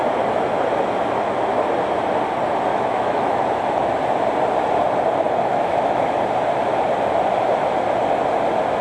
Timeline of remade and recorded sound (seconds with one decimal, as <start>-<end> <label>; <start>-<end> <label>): 0.0-2.7 recorded; 2.7-3.4 remade; 3.4-5.5 recorded; 5.5-6.2 remade; 6.2-8.8 recorded